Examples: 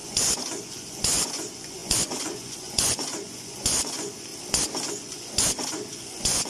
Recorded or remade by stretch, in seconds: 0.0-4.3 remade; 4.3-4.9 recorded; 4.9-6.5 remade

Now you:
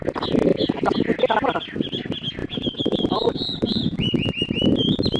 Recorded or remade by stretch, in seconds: 0.0-2.4 recorded; 2.4-4.3 remade; 4.3-5.2 recorded

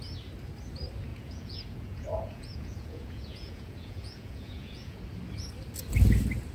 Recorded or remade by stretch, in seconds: 0.0-1.1 recorded; 1.1-5.0 remade; 5.0-6.5 recorded

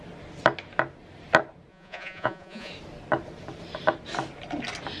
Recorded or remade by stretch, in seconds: 0.0-1.7 recorded; 1.7-2.7 remade; 2.7-5.0 recorded